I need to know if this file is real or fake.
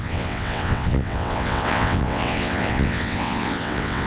fake